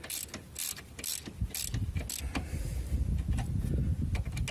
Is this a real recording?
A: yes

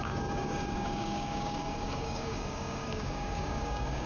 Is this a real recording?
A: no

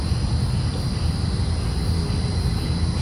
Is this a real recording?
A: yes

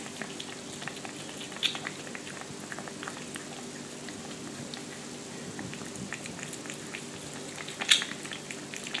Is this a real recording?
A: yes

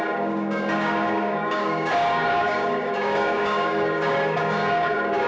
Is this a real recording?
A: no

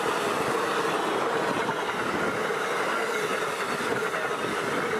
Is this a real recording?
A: yes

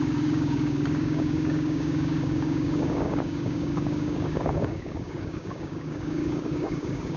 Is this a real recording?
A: no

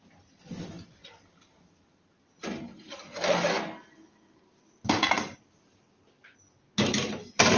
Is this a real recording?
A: yes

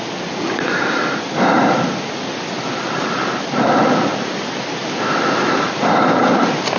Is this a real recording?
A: yes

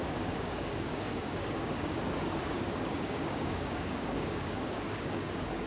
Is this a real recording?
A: no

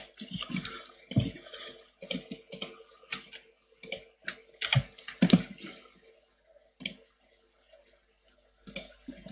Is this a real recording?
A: yes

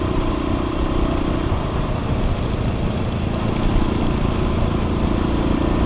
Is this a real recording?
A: yes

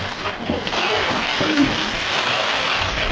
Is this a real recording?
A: no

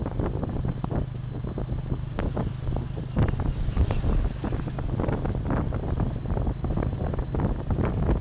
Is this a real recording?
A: yes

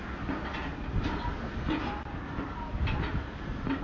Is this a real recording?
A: yes